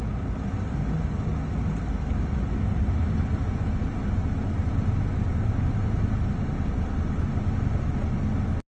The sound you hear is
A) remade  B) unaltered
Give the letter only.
B